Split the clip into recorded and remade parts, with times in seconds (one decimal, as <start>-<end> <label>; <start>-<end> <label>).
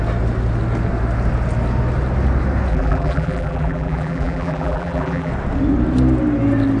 0.0-2.7 recorded; 2.7-5.3 remade; 5.3-6.8 recorded